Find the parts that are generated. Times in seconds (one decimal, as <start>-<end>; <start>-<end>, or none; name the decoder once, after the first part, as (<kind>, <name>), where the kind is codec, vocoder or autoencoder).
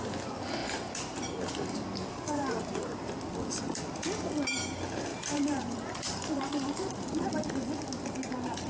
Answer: 0.6-3.1 (vocoder, BigVGAN v2); 5.1-7.3